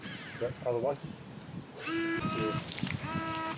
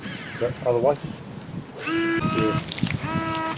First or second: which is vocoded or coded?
first